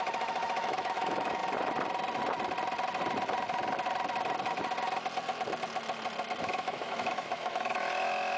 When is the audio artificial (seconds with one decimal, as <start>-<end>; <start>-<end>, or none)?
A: 0.0-1.4; 6.4-8.4